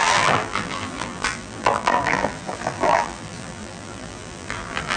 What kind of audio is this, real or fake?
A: fake